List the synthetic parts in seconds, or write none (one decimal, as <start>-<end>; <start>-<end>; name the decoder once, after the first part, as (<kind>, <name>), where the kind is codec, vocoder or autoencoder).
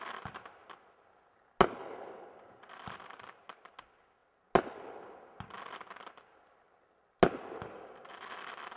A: none